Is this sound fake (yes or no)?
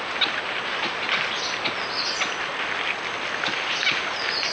no